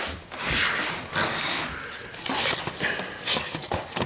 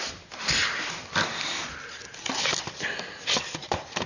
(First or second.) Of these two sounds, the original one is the first